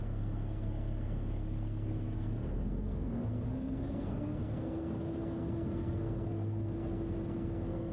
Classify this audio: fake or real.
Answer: fake